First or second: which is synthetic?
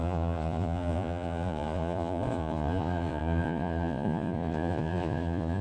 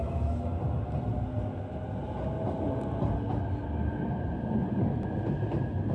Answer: first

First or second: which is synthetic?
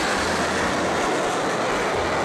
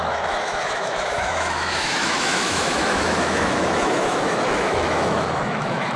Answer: second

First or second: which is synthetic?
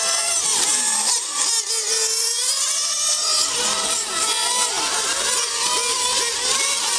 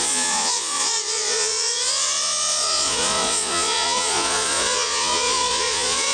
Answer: second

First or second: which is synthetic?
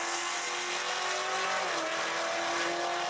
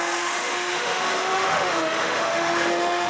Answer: second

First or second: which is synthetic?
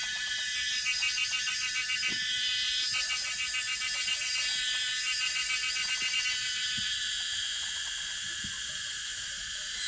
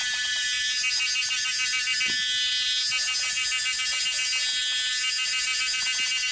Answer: first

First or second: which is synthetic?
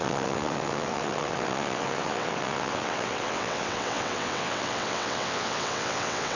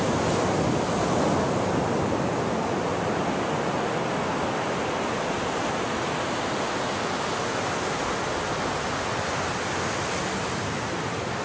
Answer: first